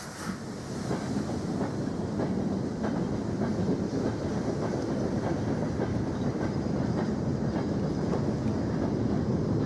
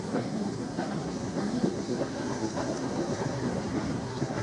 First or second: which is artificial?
second